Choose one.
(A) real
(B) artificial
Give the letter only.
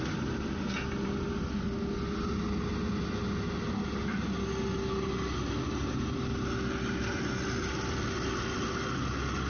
A